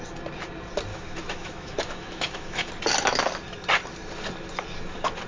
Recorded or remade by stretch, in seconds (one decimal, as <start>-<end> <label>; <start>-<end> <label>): 0.0-0.9 recorded; 0.9-2.7 remade; 2.7-5.3 recorded